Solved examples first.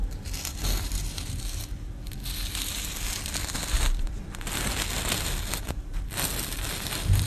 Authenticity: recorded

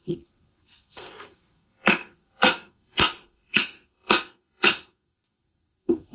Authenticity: remade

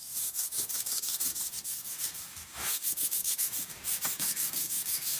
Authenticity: remade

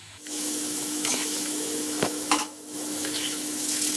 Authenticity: remade